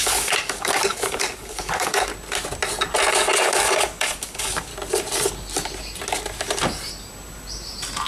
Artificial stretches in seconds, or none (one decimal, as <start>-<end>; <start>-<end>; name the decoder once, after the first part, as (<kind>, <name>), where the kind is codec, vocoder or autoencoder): 0.0-2.1 (codec, DAC); 3.1-4.7